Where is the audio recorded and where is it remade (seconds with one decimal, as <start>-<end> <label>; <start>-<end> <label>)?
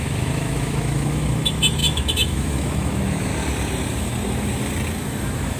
0.0-3.3 remade; 3.3-5.0 recorded; 5.0-5.6 remade